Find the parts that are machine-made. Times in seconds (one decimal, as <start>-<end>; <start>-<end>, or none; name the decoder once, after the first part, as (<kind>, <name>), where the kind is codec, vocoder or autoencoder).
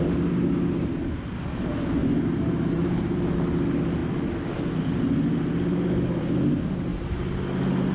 2.0-3.2 (vocoder, BigVGAN v2)